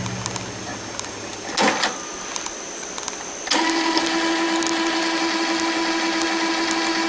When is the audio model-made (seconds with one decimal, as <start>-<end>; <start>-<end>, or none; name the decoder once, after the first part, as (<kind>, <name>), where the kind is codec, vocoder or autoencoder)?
none